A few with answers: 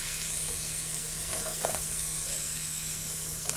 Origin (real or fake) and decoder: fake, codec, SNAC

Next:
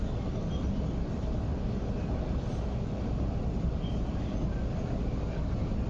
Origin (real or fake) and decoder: real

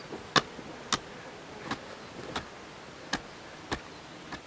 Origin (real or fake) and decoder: real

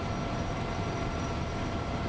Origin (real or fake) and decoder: real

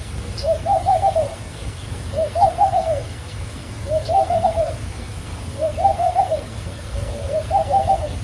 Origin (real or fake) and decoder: fake, codec, SNAC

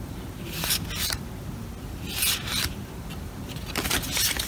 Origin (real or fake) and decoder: real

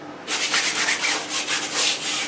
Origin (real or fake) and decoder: real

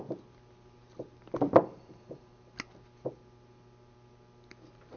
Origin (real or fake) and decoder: real